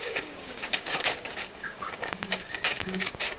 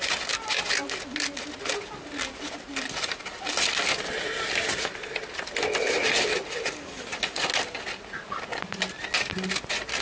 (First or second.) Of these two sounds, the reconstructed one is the first